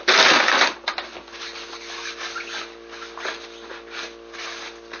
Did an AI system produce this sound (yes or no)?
no